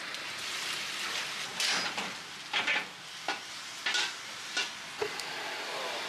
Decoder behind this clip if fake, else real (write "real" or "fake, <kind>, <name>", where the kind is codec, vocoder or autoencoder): real